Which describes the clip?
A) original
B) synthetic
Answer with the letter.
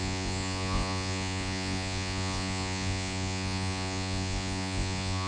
B